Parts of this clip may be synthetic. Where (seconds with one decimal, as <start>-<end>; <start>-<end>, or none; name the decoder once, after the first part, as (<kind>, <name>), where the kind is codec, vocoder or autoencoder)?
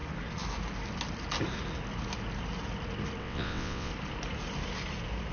3.2-3.9 (vocoder, WaveNeXt)